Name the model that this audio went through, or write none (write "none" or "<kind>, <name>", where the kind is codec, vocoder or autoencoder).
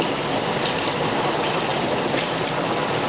none